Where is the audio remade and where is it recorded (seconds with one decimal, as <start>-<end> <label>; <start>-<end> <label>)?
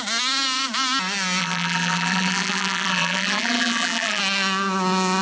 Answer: 0.0-1.4 recorded; 1.4-4.2 remade; 4.2-5.2 recorded